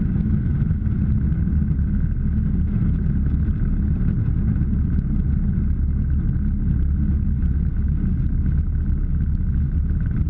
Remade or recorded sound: recorded